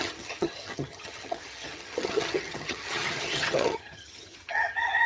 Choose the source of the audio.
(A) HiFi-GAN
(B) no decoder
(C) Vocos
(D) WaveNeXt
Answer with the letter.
A